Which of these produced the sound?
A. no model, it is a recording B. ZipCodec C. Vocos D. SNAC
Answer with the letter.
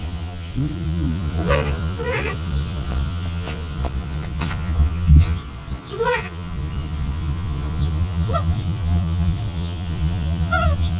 C